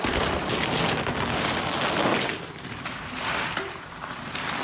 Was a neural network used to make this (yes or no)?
no